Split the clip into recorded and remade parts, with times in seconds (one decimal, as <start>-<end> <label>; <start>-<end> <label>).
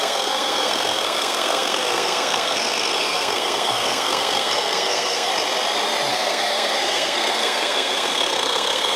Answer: 0.0-5.3 remade; 5.3-6.1 recorded; 6.1-9.0 remade